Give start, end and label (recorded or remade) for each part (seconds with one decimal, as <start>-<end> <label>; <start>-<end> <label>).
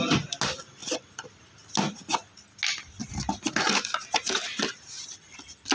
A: 0.0-5.7 recorded